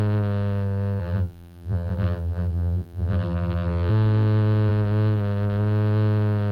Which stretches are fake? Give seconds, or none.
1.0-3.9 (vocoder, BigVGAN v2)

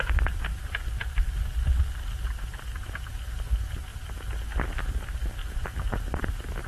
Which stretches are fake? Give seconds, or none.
5.4-6.7 (vocoder, BigVGAN v2)

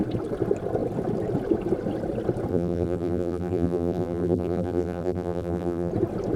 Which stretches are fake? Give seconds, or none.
2.5-5.9 (vocoder, BigVGAN v2)

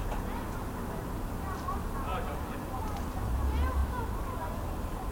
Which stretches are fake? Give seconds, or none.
none

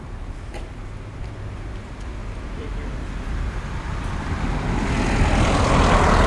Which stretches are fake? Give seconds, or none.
2.2-6.3 (vocoder, BigVGAN v2)

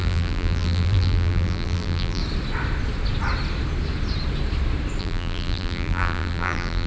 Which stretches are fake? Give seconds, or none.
0.0-2.2 (vocoder, BigVGAN v2); 5.0-6.9